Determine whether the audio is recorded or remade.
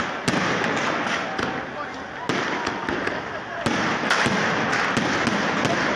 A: recorded